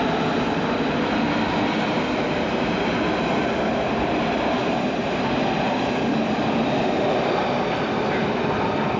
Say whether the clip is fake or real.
real